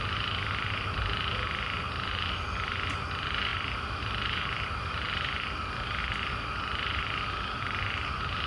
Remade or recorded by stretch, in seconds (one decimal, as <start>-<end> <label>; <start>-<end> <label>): 0.0-3.5 recorded; 3.5-6.0 remade; 6.0-8.5 recorded

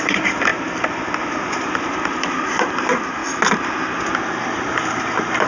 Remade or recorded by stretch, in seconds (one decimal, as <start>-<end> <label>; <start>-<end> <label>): 0.0-3.2 remade; 3.2-4.4 recorded; 4.4-5.5 remade